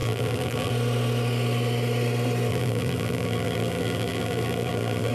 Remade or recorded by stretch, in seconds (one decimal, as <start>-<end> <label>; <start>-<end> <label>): 0.0-0.7 remade; 0.7-2.5 recorded; 2.5-5.1 remade

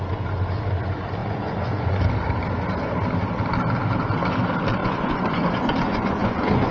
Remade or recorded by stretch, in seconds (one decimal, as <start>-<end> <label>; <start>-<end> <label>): 0.0-1.2 recorded; 1.2-2.0 remade; 2.0-4.8 recorded; 4.8-6.7 remade

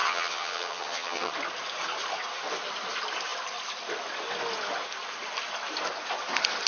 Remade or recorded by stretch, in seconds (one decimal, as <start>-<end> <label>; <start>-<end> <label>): 0.0-1.3 remade; 1.3-6.7 recorded